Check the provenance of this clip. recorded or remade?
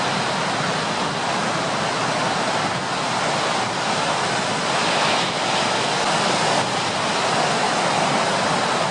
recorded